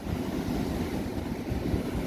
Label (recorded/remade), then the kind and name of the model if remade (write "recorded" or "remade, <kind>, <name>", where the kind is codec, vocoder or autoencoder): recorded